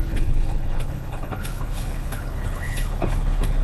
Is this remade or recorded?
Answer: remade